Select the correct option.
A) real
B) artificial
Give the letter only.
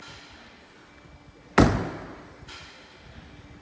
A